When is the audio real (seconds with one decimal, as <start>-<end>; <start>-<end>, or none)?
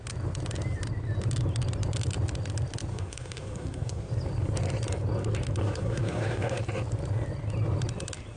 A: 0.0-2.9; 4.1-5.6; 6.6-8.4